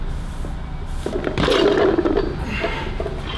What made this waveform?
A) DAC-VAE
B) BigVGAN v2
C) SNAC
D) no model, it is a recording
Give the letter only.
D